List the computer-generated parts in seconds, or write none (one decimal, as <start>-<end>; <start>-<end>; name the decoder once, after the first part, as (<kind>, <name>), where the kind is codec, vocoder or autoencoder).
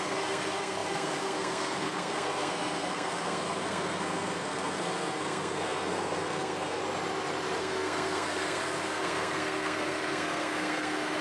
0.0-6.8 (codec, SNAC); 7.6-11.2